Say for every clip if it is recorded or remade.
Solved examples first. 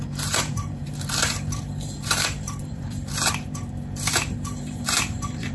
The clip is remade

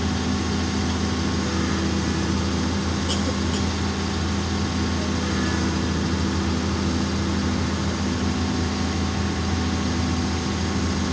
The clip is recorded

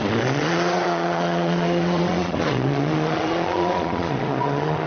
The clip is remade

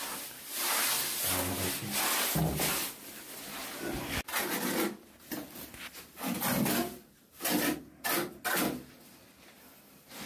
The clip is recorded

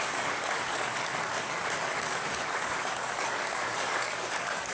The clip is remade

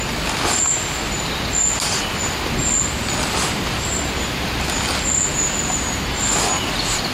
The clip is recorded